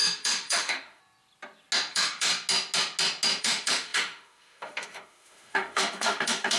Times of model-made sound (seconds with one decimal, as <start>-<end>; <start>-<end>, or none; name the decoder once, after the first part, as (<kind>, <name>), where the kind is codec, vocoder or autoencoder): 0.0-1.0 (autoencoder, DAC-VAE); 1.9-2.3; 3.4-6.6